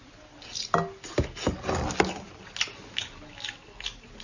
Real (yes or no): yes